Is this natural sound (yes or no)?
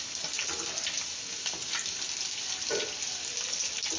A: yes